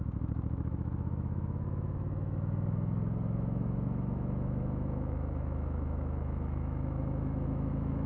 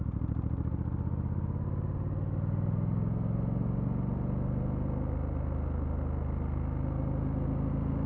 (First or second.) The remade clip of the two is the first